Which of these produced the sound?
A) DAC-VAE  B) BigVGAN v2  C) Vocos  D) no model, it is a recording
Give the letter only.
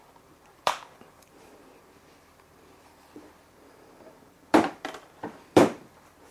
B